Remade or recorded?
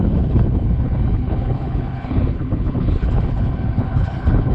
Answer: remade